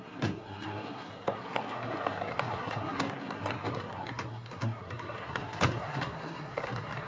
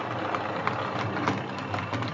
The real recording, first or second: second